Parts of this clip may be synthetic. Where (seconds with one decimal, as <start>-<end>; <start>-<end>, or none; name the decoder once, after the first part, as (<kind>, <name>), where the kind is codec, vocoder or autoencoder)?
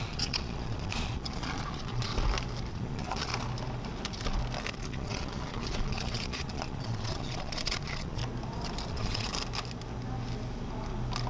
0.0-2.1 (vocoder, Vocos); 2.7-3.3; 4.7-8.2; 8.9-9.3